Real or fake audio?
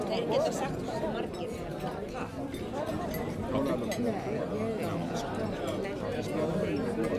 real